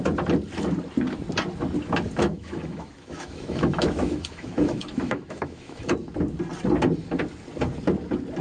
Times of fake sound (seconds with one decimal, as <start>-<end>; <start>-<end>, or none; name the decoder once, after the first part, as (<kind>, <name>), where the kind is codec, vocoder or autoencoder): 2.2-5.9 (autoencoder, DAC-VAE)